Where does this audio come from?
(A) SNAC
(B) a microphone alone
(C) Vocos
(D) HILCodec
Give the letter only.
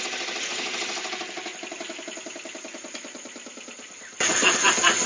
B